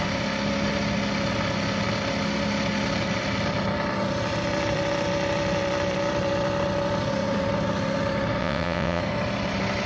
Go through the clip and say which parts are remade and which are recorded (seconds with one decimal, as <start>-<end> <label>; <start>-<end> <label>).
0.0-8.4 recorded; 8.4-9.0 remade; 9.0-9.9 recorded